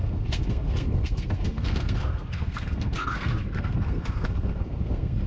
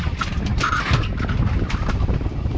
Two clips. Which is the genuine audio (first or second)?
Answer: second